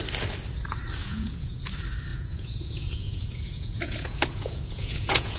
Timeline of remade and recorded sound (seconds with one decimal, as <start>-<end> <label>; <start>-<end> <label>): 0.0-1.0 recorded; 1.0-1.6 remade; 1.6-2.1 recorded; 2.1-5.4 remade